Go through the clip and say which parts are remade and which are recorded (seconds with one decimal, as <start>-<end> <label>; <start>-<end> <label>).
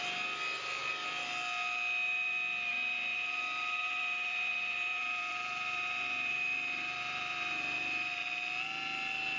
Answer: 0.0-3.1 recorded; 3.1-8.2 remade; 8.2-9.4 recorded